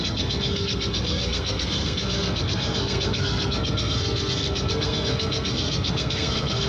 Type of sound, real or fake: fake